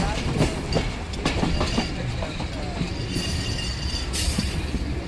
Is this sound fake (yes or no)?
no